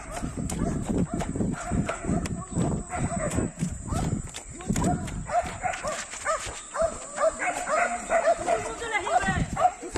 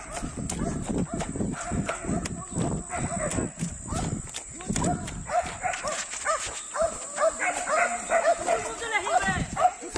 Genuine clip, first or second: second